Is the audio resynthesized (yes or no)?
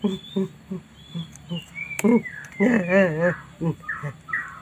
no